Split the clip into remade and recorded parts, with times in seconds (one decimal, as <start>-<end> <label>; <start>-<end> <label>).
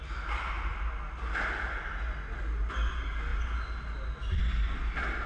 0.0-5.3 recorded